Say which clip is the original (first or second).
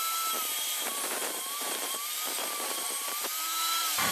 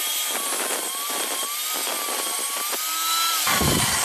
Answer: second